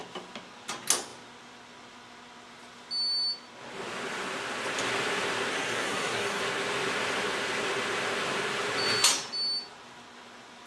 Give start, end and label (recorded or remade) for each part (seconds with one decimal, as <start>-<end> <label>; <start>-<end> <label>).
0.0-5.5 recorded; 5.5-6.4 remade; 6.4-10.7 recorded